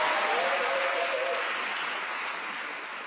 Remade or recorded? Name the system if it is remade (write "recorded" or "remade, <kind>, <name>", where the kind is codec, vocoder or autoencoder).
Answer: recorded